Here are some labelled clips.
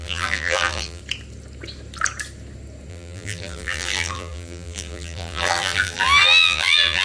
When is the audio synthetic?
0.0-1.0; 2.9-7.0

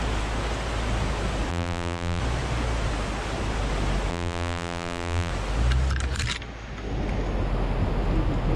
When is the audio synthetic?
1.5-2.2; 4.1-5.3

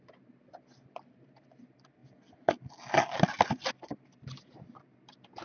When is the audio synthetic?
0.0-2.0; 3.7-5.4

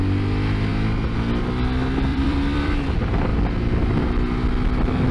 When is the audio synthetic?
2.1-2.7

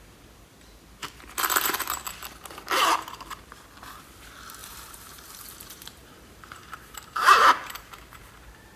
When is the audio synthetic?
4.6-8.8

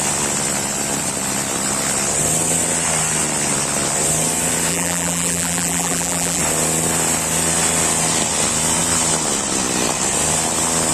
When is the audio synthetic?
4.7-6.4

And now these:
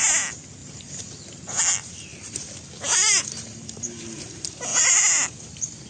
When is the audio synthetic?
0.6-1.6; 2.1-4.2; 4.7-5.9

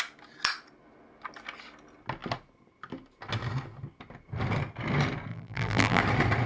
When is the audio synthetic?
5.3-6.0